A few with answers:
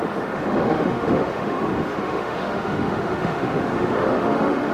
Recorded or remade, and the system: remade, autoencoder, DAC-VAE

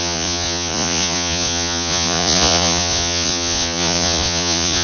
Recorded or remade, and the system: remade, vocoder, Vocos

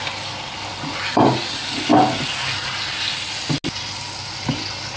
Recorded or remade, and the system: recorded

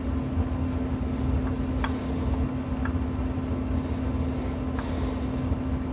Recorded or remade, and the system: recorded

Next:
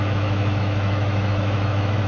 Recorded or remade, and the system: remade, autoencoder, DAC-VAE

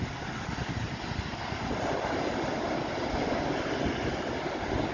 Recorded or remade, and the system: remade, vocoder, BigVGAN v2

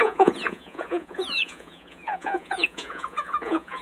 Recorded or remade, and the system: remade, vocoder, Vocos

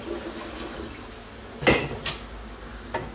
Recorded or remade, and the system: recorded